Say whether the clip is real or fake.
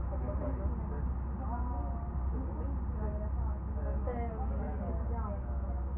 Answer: real